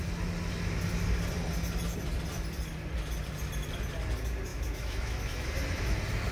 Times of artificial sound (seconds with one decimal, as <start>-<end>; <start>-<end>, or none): 4.5-5.5